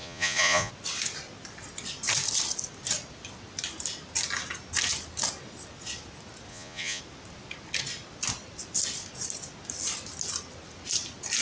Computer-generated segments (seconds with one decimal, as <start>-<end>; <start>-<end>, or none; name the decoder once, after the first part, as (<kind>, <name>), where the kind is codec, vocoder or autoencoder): 0.0-0.7 (vocoder, Vocos); 6.5-7.0